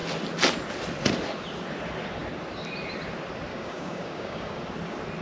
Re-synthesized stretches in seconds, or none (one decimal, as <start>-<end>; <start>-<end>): 3.5-4.6